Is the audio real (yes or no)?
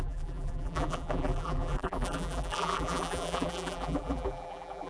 no